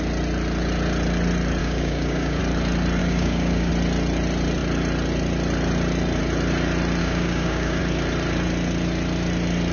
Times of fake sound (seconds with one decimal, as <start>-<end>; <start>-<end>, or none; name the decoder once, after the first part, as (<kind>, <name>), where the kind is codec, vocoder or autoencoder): 1.6-2.4 (codec, DAC); 3.0-3.7; 7.0-7.8